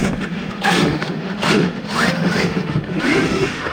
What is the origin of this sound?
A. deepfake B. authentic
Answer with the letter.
A